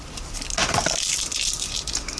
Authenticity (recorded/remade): recorded